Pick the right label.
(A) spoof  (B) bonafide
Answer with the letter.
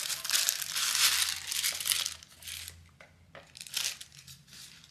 B